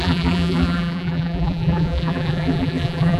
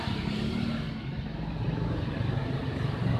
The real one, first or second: second